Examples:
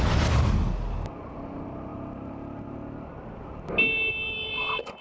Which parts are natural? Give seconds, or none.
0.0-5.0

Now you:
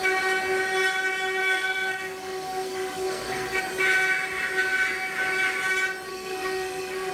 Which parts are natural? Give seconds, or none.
0.0-1.4; 3.6-6.1

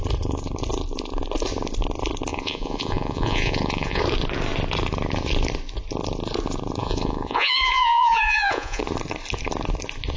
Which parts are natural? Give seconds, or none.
0.0-2.3; 4.0-6.8; 8.8-10.2